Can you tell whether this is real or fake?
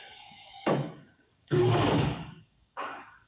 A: fake